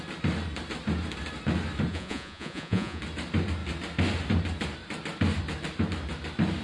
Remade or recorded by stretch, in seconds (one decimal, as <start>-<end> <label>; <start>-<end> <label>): 0.0-1.9 recorded; 1.9-3.0 remade; 3.0-6.6 recorded